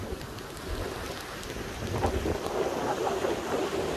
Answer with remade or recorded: recorded